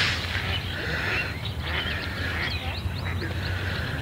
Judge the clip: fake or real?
real